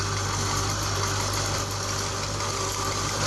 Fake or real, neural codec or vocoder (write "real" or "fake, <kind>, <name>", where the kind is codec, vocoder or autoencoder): real